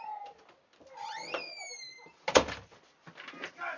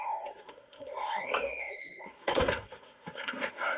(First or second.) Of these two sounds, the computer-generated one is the second